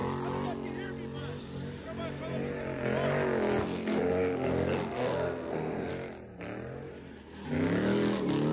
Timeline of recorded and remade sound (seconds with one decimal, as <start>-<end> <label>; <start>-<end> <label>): 0.0-3.6 recorded; 3.6-5.9 remade; 5.9-8.5 recorded